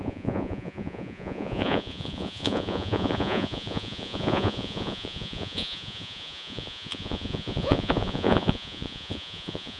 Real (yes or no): no